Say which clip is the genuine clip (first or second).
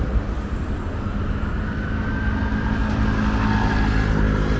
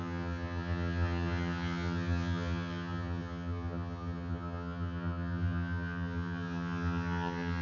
first